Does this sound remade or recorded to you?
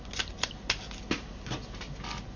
recorded